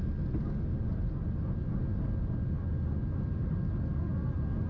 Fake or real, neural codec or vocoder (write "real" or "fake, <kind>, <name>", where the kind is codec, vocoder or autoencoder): real